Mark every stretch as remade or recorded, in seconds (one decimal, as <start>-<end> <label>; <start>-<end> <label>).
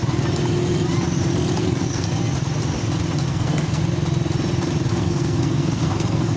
0.0-1.6 recorded; 1.6-2.2 remade; 2.2-3.3 recorded; 3.3-3.8 remade; 3.8-4.9 recorded; 4.9-6.4 remade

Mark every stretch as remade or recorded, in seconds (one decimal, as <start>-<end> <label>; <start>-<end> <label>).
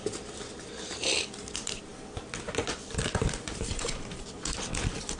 0.0-5.2 recorded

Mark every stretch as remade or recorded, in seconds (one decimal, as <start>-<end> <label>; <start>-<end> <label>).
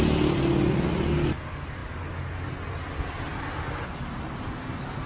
0.0-5.1 recorded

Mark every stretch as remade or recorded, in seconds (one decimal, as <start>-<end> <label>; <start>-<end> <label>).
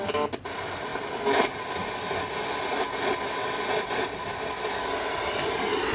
0.0-5.9 recorded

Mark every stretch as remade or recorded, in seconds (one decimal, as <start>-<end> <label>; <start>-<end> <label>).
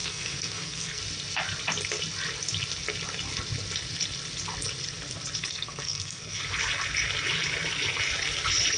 0.0-1.0 remade; 1.0-5.5 recorded; 5.5-6.4 remade; 6.4-8.8 recorded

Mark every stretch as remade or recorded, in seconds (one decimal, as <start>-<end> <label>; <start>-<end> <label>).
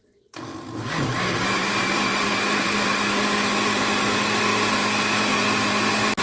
0.0-6.2 recorded